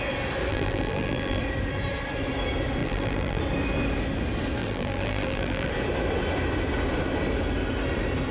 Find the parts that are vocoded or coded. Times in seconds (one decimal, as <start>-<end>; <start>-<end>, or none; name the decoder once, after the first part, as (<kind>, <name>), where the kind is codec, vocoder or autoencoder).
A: 0.5-1.4 (vocoder, BigVGAN v2); 2.8-3.4; 4.6-5.7